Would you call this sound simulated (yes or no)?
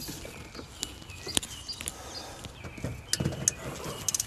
no